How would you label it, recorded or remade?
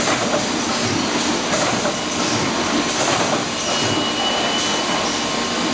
recorded